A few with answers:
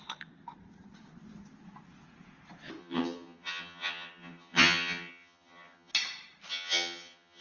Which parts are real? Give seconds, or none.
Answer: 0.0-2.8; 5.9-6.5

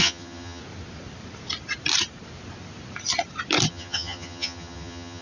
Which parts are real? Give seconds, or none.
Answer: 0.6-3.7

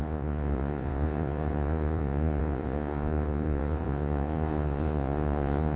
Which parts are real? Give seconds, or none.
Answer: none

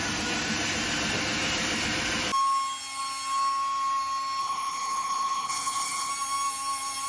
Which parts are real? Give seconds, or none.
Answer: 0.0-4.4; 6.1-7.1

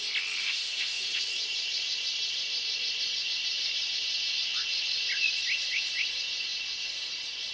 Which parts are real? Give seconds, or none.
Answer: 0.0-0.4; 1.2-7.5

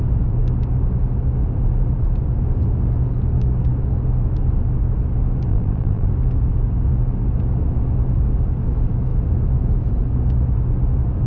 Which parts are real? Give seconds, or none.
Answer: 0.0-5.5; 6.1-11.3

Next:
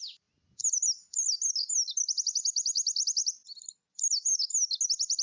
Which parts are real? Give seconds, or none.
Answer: 0.0-5.2